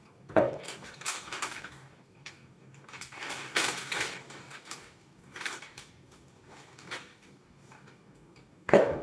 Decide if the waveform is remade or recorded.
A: remade